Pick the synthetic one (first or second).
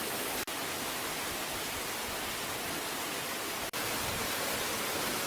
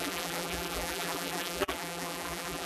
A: second